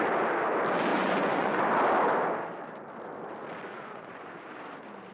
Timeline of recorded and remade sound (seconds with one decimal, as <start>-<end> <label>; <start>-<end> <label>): 0.0-0.9 recorded; 0.9-1.6 remade; 1.6-3.7 recorded; 3.7-4.3 remade; 4.3-5.1 recorded